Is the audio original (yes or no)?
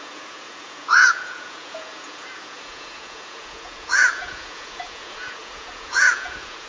no